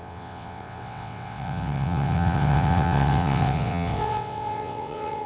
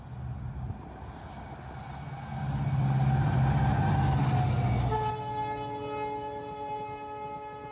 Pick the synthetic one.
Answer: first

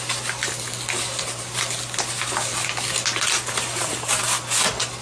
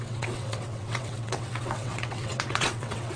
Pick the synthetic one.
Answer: second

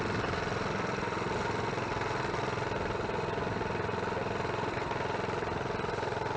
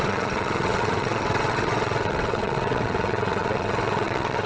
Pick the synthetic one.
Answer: second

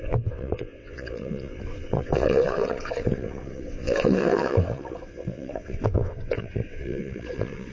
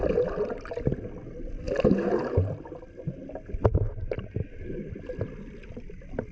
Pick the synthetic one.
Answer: first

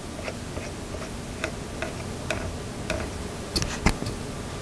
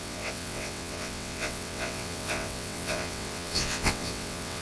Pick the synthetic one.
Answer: second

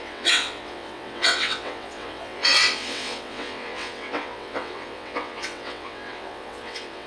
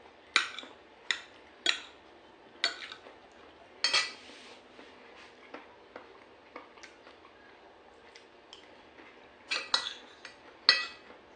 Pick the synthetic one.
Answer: first